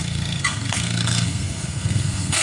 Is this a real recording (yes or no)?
no